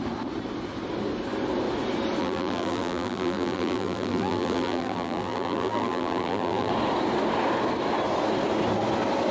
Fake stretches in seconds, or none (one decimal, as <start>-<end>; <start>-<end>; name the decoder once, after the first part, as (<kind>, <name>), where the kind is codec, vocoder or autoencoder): 2.2-6.7 (vocoder, BigVGAN v2)